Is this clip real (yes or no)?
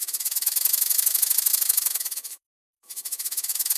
no